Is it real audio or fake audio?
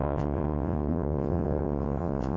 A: fake